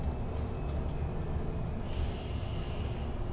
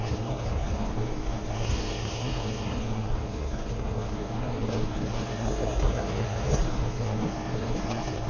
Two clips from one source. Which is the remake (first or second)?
second